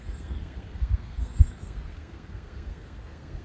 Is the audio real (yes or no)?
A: no